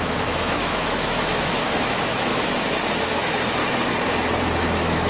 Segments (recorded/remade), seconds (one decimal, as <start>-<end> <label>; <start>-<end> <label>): 0.0-2.3 remade; 2.3-3.0 recorded; 3.0-3.6 remade; 3.6-4.4 recorded; 4.4-5.1 remade